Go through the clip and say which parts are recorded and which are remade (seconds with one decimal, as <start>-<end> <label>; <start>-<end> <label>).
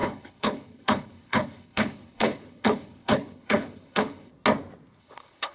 0.0-4.3 remade; 4.3-5.0 recorded; 5.0-5.5 remade